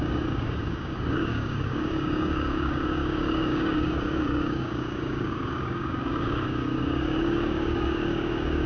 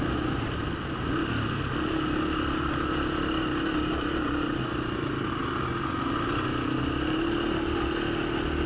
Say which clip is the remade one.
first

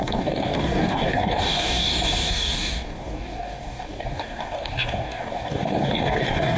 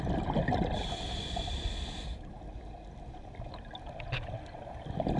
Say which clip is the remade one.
first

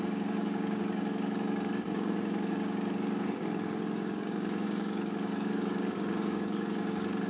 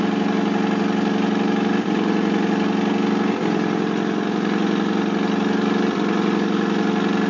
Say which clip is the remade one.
first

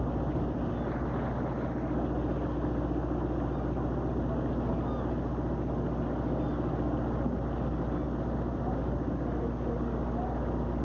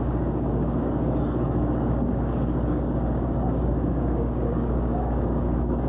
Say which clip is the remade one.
second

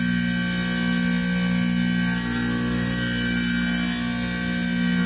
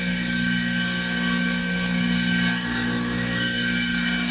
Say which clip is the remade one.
second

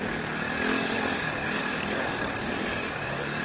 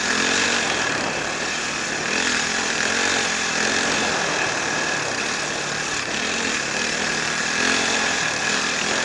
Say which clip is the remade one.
first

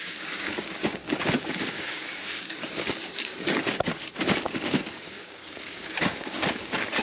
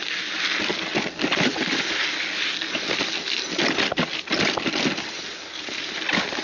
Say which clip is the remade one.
first